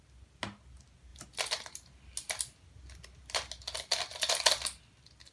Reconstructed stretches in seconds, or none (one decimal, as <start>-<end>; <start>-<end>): none